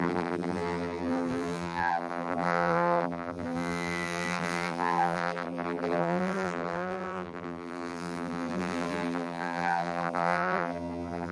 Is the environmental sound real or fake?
fake